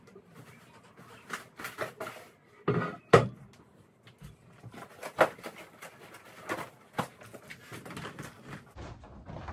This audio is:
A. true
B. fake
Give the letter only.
A